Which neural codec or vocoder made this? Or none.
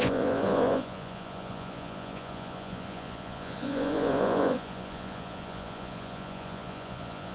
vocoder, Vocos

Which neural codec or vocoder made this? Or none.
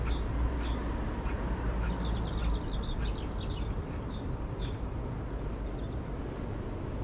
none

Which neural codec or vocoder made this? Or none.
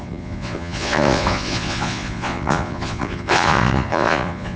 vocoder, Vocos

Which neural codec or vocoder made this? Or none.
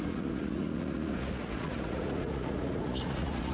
vocoder, Vocos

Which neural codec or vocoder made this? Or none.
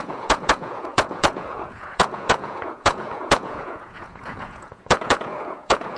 vocoder, Vocos